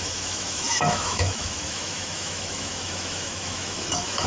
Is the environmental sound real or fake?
fake